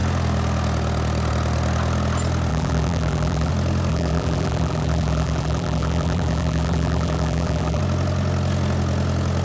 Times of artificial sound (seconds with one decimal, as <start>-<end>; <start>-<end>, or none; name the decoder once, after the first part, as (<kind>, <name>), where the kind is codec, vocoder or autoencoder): 2.5-3.5 (vocoder, BigVGAN v2); 3.9-7.8

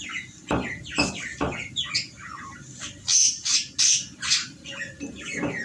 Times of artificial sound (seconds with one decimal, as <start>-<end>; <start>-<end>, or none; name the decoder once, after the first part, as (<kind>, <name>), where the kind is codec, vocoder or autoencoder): 3.2-3.8 (vocoder, BigVGAN v2)

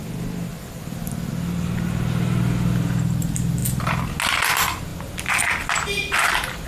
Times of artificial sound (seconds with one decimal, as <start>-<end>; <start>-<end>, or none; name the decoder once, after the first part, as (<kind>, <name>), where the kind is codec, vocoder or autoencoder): 0.5-1.3 (vocoder, BigVGAN v2)

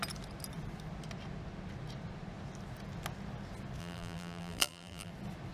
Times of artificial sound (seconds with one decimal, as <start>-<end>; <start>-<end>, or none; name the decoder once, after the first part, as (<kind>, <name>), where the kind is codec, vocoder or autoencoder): 3.8-5.1 (vocoder, BigVGAN v2)

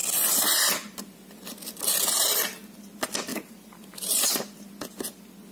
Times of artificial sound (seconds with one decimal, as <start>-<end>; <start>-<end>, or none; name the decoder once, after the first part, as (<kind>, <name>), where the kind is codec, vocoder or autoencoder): 0.0-1.9 (vocoder, BigVGAN v2); 3.3-4.7